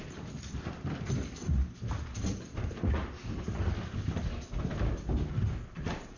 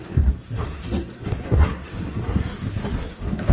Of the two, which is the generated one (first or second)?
second